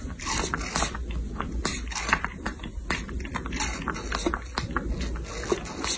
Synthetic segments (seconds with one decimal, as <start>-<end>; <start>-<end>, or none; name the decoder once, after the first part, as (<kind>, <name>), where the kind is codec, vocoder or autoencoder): none